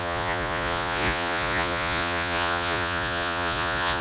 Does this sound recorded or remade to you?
remade